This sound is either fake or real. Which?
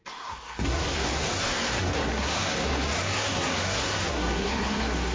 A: fake